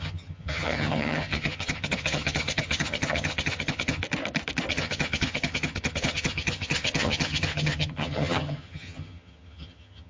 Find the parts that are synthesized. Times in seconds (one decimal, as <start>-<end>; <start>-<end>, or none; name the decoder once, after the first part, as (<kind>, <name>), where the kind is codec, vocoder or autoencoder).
0.0-4.0 (vocoder, HiFi-GAN); 4.7-10.1